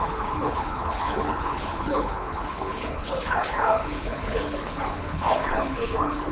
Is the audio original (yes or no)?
no